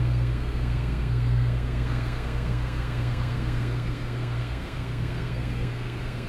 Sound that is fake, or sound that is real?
fake